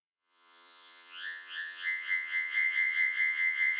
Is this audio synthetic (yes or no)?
yes